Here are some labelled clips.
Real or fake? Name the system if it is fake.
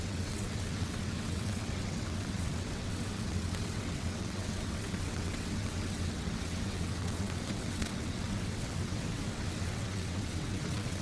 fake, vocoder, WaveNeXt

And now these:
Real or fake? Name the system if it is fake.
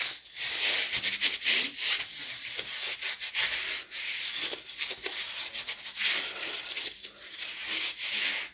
real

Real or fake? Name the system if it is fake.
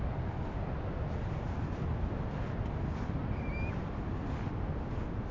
real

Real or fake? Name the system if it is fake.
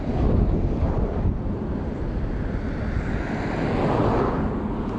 real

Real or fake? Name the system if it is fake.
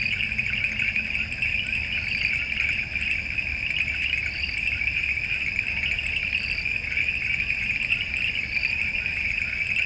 real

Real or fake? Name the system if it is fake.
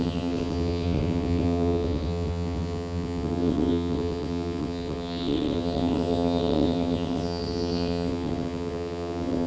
fake, vocoder, WaveNeXt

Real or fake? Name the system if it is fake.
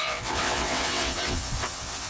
fake, vocoder, WaveNeXt